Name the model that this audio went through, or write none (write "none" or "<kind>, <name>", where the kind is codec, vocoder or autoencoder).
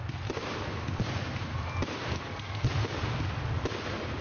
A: none